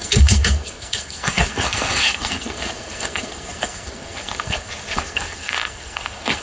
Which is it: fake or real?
fake